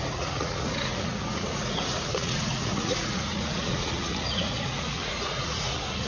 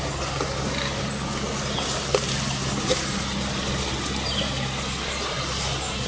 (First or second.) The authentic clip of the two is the second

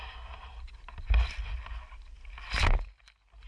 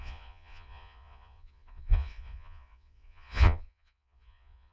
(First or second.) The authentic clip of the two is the first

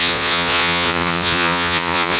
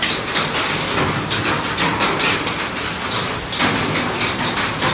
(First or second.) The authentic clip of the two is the second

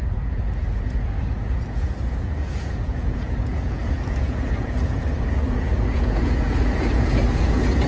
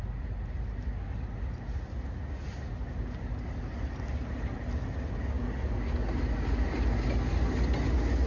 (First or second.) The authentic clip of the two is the second